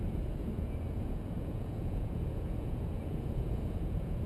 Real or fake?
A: fake